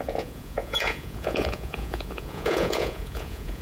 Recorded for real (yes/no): no